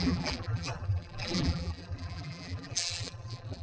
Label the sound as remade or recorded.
remade